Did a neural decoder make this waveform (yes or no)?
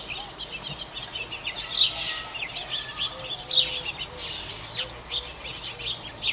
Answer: no